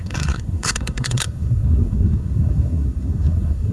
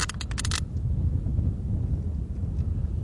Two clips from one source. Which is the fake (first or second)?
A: first